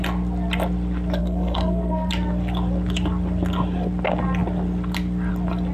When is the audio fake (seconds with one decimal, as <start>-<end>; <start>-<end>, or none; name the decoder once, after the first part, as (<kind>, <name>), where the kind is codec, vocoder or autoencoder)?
1.2-2.1 (codec, SNAC)